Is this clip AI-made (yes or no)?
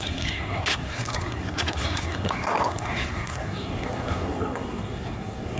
yes